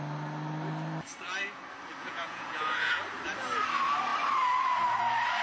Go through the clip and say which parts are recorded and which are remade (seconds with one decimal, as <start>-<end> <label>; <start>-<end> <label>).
0.0-2.0 recorded; 2.0-3.0 remade; 3.0-5.4 recorded